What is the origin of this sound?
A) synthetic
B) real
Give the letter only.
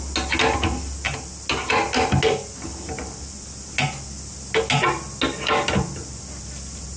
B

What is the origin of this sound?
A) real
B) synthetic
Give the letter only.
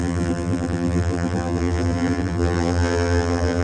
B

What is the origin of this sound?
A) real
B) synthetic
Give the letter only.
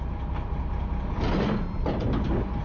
A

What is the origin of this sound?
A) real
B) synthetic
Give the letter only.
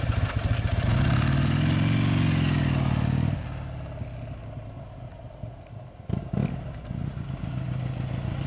A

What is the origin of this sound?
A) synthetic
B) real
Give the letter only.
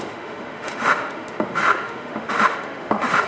A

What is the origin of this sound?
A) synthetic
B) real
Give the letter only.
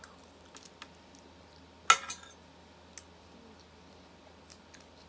B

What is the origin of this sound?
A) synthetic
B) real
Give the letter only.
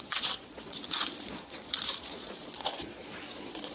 A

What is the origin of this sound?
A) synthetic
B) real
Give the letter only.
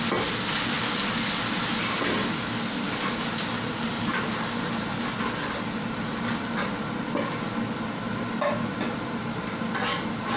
B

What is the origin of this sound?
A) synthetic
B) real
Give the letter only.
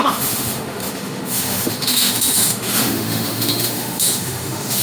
A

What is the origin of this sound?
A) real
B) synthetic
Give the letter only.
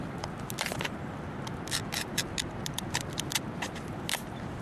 A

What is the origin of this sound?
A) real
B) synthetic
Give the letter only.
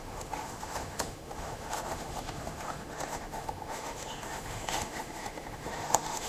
B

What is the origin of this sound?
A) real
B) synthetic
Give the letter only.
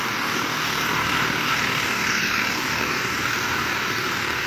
B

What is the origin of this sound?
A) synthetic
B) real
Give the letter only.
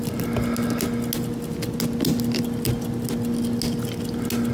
B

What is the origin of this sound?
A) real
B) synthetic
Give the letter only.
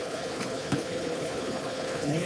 B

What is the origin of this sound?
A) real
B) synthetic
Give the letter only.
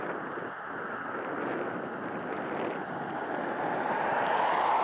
A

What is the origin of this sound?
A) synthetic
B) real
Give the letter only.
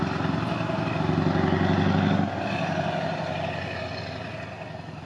B